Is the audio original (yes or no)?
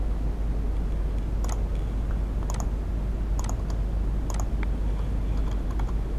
yes